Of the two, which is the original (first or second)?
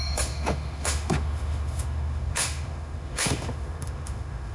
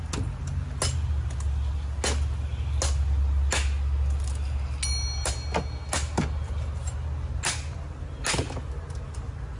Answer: second